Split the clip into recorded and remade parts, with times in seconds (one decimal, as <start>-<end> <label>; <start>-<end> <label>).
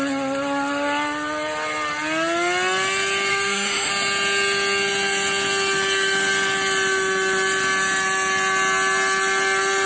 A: 0.0-3.3 recorded; 3.3-3.9 remade; 3.9-9.9 recorded